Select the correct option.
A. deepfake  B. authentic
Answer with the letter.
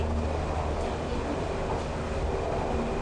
B